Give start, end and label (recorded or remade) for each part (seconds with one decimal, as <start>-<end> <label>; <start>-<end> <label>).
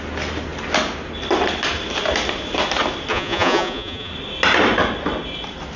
0.0-3.1 recorded; 3.1-4.1 remade; 4.1-5.8 recorded